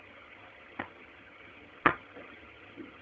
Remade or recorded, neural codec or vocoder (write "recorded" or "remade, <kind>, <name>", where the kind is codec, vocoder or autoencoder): remade, vocoder, HiFi-GAN